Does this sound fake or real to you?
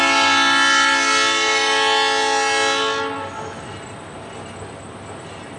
real